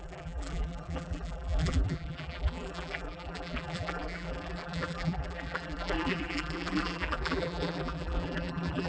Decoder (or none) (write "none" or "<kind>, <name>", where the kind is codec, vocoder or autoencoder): vocoder, BigVGAN v2